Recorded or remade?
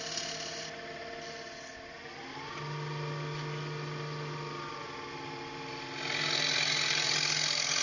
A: recorded